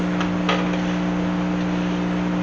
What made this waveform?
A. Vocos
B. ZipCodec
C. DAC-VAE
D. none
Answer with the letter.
D